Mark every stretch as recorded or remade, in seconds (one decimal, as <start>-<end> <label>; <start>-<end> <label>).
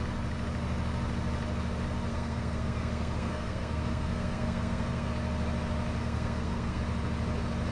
0.0-2.1 recorded; 2.1-5.1 remade; 5.1-6.0 recorded; 6.0-6.8 remade; 6.8-7.7 recorded